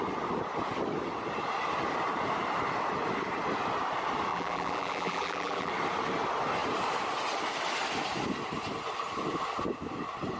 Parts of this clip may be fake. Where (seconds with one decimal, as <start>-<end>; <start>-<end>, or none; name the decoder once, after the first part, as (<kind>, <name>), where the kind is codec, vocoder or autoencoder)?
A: 4.3-5.7 (vocoder, BigVGAN v2)